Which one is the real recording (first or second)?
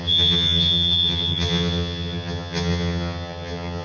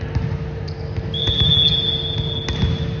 second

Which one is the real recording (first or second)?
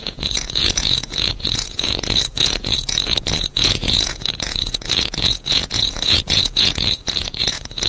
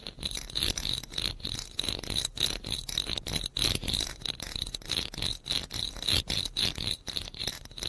second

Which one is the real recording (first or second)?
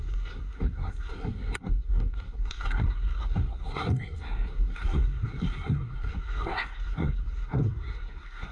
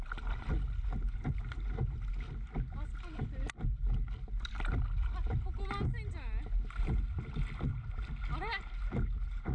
second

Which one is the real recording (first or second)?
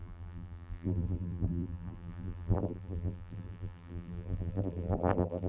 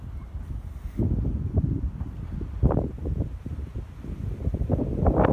second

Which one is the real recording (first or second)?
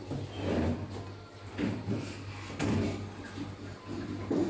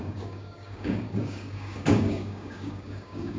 first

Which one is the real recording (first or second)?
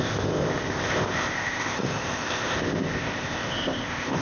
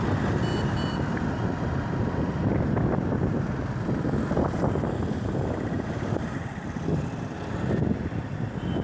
second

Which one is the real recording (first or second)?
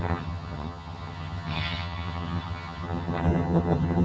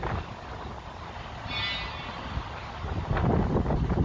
second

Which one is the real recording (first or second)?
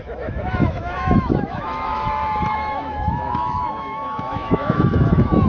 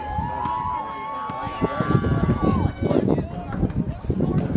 second